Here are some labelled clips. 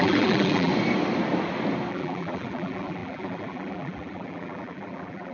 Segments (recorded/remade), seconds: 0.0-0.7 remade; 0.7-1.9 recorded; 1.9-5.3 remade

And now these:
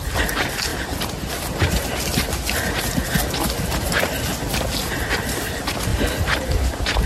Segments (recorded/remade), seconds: 0.0-7.1 recorded

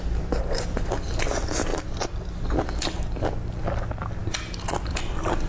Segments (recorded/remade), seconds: 0.0-4.2 recorded; 4.2-5.5 remade

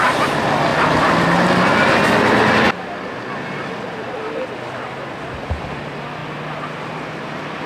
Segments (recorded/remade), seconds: 0.0-0.7 remade; 0.7-3.7 recorded; 3.7-6.2 remade; 6.2-6.9 recorded; 6.9-7.7 remade

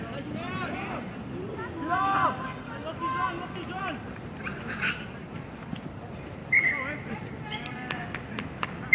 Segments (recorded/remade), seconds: 0.0-2.8 remade; 2.8-3.8 recorded; 3.8-8.9 remade

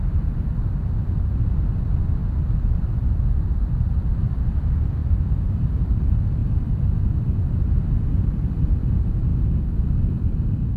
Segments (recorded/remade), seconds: 0.0-5.0 remade; 5.0-5.5 recorded; 5.5-9.3 remade; 9.3-9.9 recorded; 9.9-10.8 remade

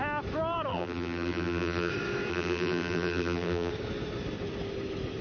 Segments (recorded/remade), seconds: 0.0-0.7 recorded; 0.7-1.9 remade; 1.9-2.3 recorded; 2.3-3.7 remade; 3.7-5.2 recorded